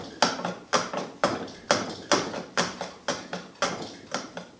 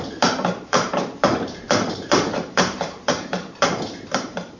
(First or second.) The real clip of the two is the first